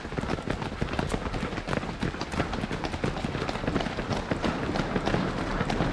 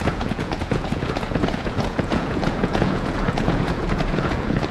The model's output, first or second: second